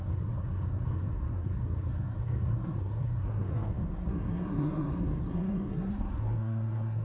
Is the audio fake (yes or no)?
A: yes